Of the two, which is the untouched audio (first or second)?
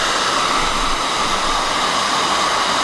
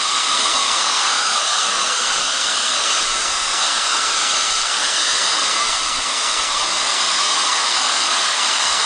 first